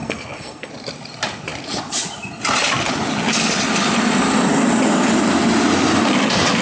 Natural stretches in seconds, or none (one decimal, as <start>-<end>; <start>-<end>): 0.7-6.6